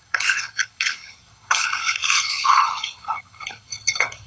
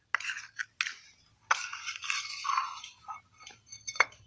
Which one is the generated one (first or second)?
first